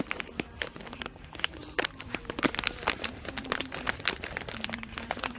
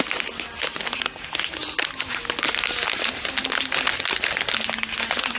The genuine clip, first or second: second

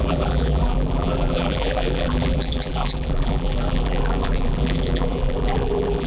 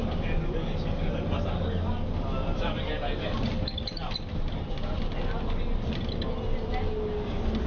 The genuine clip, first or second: second